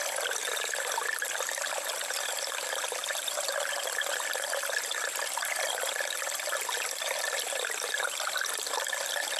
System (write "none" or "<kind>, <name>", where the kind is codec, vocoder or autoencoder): none